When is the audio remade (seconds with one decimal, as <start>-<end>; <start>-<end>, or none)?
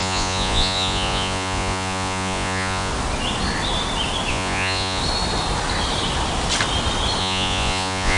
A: 0.0-2.9; 4.3-5.0; 7.2-8.2